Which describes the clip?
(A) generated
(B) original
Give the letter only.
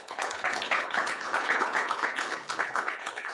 A